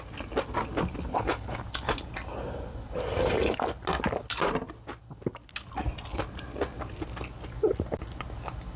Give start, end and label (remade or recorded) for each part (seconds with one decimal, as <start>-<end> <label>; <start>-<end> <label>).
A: 0.0-1.1 recorded; 1.1-1.6 remade; 1.6-8.8 recorded